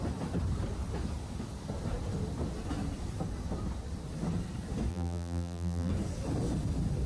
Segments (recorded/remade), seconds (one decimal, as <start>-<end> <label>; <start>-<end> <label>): 0.0-4.9 recorded; 4.9-5.9 remade; 5.9-7.1 recorded